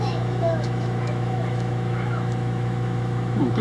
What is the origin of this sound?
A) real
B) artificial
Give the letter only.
B